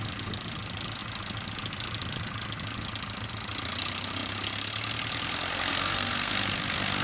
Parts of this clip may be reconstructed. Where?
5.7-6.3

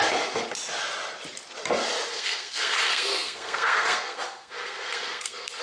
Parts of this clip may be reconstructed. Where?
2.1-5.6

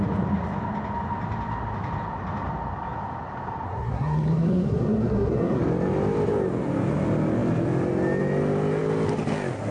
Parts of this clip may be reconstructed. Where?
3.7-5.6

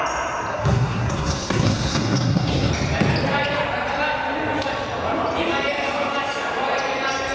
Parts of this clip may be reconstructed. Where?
0.5-2.7